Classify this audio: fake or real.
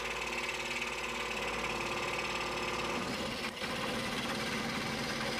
real